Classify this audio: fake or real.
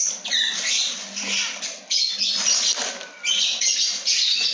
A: real